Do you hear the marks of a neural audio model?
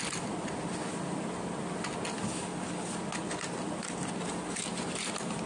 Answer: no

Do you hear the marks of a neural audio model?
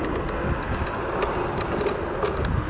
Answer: no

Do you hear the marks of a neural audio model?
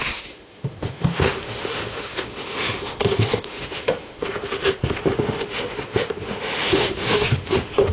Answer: yes